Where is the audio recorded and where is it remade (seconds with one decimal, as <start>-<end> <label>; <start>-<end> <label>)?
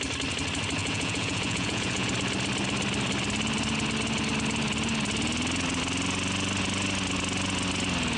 0.0-0.8 recorded; 0.8-2.1 remade; 2.1-8.2 recorded